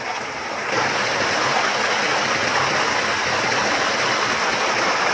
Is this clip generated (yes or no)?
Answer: no